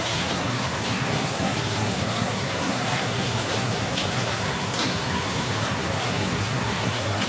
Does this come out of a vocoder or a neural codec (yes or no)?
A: yes